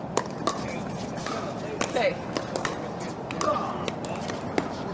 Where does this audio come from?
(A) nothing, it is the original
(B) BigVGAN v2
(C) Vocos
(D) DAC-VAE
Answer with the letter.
A